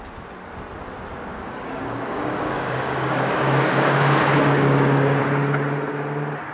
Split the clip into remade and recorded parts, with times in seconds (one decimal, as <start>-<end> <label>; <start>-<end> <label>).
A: 0.0-1.3 recorded; 1.3-5.2 remade; 5.2-6.5 recorded